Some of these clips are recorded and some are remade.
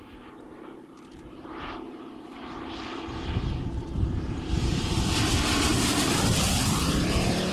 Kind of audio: remade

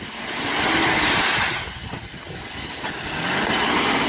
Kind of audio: recorded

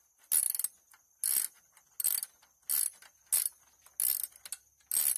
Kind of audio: recorded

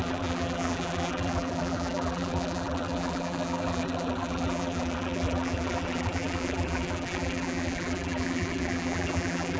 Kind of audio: remade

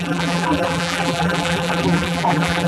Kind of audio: remade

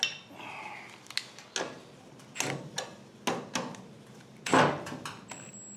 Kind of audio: recorded